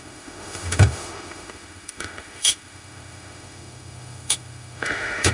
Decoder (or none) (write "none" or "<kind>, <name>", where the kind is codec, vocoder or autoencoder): autoencoder, DAC-VAE